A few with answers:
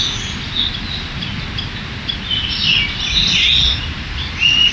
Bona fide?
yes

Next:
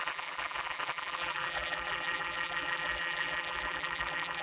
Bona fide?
no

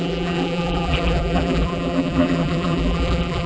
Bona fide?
no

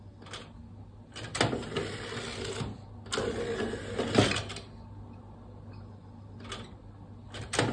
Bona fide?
yes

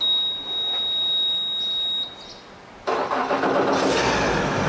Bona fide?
yes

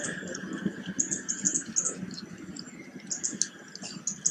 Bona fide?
yes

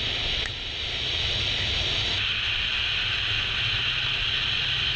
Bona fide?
yes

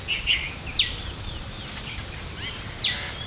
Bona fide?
yes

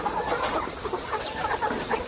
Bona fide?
no